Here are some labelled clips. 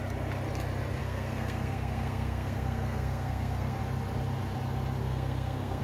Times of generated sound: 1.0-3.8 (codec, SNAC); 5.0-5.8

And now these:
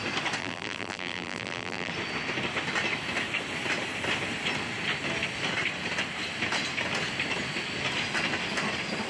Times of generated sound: 0.4-1.9 (vocoder, BigVGAN v2)

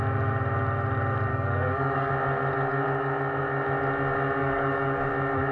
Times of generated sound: 1.3-2.1 (codec, DAC); 4.4-5.1

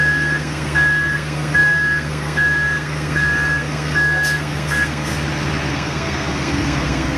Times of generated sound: 0.0-5.1 (codec, SNAC); 5.7-7.2

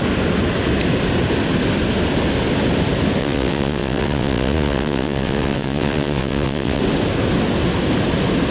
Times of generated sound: 3.2-6.8 (vocoder, WaveNeXt)

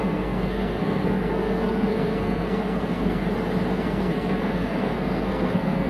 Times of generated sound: 0.0-3.2 (codec, SNAC); 3.7-5.9

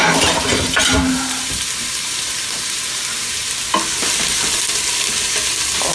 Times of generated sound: 0.0-3.5 (vocoder, BigVGAN v2)